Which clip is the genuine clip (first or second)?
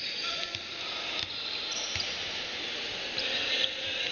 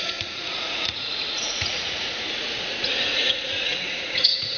first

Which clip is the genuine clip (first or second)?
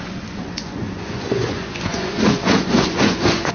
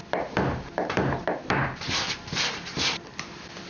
second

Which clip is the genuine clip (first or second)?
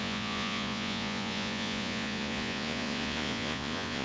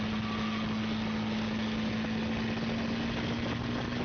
second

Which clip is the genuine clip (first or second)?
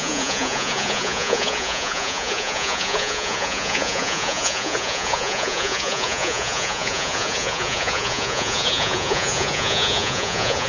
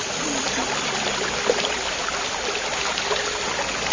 second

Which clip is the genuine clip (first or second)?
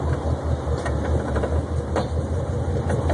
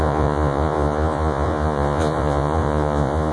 first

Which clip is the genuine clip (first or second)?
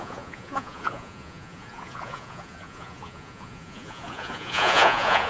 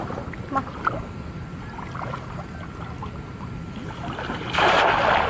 second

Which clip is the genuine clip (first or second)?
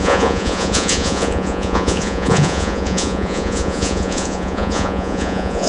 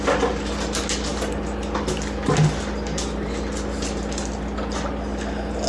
second